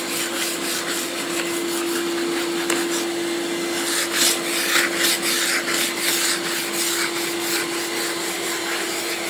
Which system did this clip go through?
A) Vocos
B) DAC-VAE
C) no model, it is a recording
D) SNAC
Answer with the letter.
C